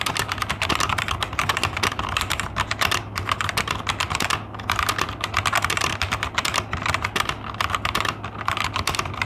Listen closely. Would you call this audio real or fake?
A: real